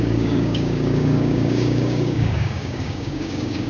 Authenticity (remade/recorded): remade